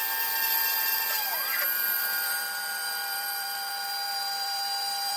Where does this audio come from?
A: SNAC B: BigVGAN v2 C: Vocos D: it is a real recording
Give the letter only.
B